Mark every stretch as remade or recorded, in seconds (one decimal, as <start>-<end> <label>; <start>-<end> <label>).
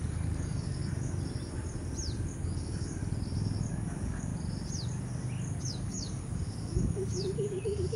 0.0-0.8 remade; 0.8-2.4 recorded; 2.4-3.0 remade; 3.0-3.7 recorded; 3.7-4.3 remade; 4.3-5.6 recorded; 5.6-8.0 remade